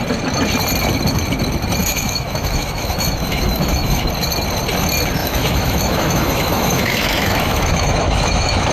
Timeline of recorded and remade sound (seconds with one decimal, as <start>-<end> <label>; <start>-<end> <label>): 0.0-1.8 recorded; 1.8-4.1 remade; 4.1-5.2 recorded; 5.2-8.7 remade